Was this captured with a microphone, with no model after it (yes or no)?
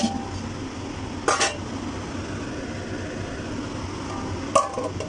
yes